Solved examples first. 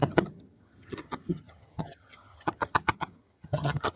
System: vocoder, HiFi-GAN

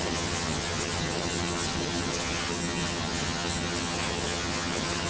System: vocoder, HiFi-GAN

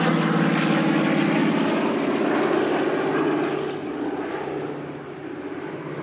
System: none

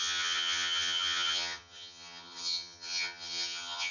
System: vocoder, HiFi-GAN